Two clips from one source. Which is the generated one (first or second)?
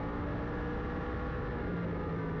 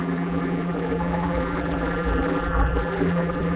second